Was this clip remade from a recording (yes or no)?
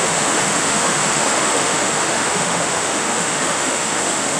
yes